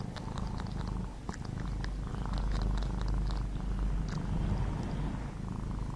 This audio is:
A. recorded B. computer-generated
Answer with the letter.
A